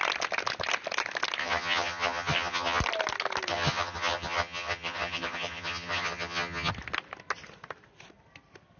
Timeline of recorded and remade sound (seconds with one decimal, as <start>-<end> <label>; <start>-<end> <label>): 0.0-1.4 recorded; 1.4-2.8 remade; 2.8-3.5 recorded; 3.5-6.7 remade; 6.7-8.8 recorded